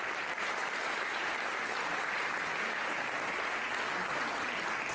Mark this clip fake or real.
real